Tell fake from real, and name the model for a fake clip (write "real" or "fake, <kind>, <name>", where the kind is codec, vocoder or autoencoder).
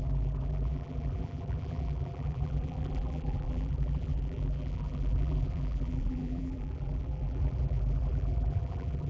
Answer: fake, vocoder, BigVGAN v2